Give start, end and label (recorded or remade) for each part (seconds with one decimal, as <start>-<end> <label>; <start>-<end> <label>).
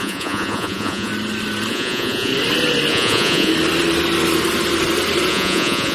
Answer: 0.0-1.1 remade; 1.1-1.7 recorded; 1.7-2.3 remade; 2.3-2.9 recorded; 2.9-3.5 remade; 3.5-5.3 recorded; 5.3-5.9 remade